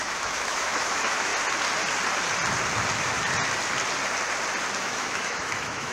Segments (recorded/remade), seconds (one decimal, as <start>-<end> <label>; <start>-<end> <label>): 0.0-1.3 remade; 1.3-4.8 recorded; 4.8-5.9 remade